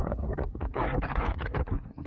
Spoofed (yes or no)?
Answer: yes